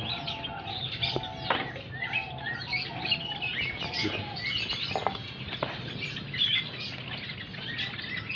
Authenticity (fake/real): real